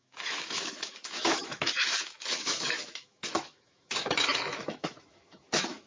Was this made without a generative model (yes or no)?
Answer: no